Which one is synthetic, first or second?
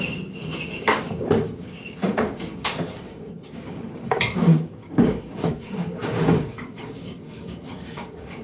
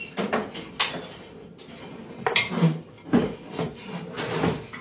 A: first